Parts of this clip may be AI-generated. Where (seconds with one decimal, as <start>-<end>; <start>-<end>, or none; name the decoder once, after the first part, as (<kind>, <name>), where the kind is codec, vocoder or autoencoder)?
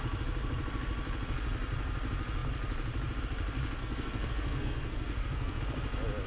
3.8-5.6 (codec, SNAC)